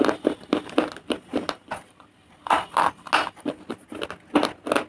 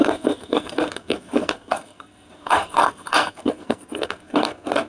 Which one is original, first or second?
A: first